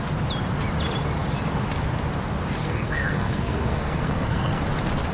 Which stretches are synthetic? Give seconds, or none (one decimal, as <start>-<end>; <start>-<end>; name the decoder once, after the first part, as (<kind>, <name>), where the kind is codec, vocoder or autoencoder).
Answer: 2.6-4.6 (codec, SNAC)